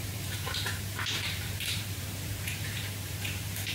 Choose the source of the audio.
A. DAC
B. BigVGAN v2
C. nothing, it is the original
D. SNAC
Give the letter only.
B